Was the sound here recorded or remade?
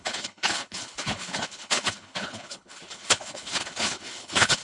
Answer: remade